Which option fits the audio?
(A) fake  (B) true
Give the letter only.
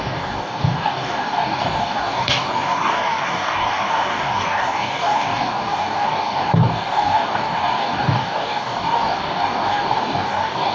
A